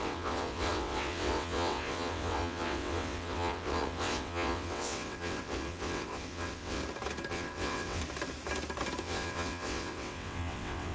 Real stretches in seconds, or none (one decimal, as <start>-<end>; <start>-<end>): 6.8-7.3; 8.0-9.0